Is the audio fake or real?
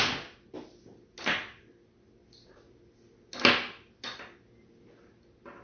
real